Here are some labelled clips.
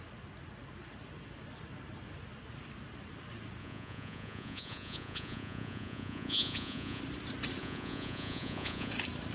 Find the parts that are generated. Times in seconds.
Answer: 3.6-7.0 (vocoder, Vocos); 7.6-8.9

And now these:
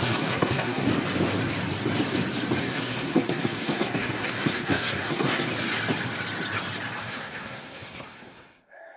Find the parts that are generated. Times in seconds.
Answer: 0.0-0.9 (codec, SNAC); 2.6-5.5; 7.0-9.0

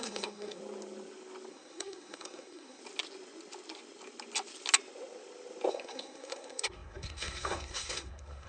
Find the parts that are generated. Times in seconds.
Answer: 0.0-0.6 (codec, SNAC); 1.5-2.8; 5.7-8.5

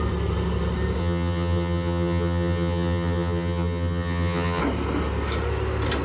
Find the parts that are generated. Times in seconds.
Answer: 1.0-4.6 (vocoder, HiFi-GAN)

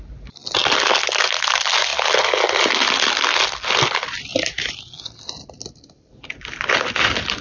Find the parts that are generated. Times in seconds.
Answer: none